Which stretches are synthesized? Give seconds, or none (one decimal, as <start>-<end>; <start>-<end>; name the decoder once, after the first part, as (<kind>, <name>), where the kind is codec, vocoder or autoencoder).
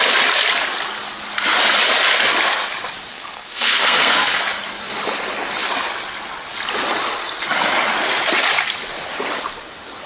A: 3.1-4.4 (codec, SNAC)